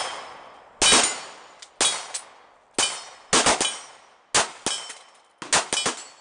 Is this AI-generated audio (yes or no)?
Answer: no